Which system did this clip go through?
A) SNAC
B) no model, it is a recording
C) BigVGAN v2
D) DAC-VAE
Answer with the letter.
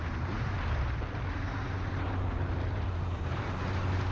C